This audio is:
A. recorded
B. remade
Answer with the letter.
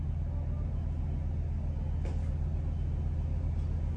A